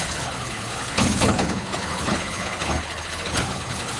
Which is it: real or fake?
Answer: fake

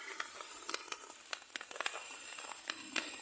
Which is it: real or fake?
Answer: real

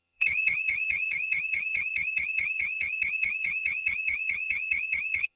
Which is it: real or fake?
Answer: fake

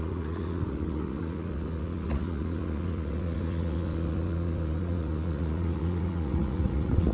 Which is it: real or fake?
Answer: fake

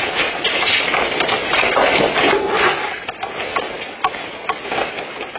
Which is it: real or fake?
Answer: real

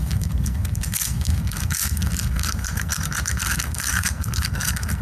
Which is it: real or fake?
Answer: fake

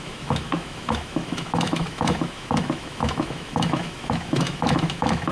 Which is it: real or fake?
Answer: fake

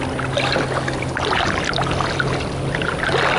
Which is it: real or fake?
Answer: real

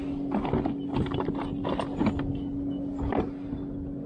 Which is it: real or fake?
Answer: real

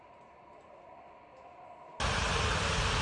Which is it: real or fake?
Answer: real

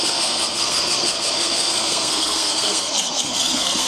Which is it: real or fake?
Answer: fake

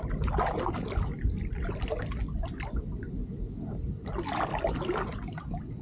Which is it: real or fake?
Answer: real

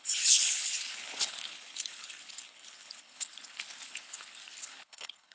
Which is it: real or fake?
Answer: fake